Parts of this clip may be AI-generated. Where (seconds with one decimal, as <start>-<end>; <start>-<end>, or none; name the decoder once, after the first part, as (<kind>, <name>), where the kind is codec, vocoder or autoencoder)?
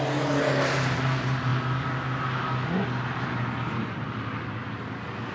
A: none